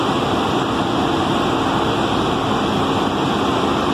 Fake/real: real